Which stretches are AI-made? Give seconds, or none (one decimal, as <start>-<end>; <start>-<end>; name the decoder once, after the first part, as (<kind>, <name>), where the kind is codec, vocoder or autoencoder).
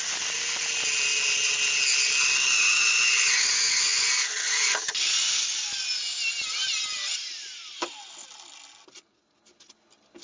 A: none